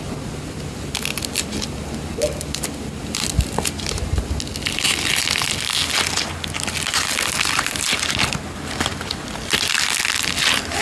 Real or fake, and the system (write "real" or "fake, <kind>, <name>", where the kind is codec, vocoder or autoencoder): real